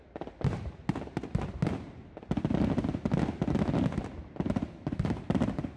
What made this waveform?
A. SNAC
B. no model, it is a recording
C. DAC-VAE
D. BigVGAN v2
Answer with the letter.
B